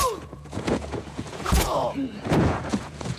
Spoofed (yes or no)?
yes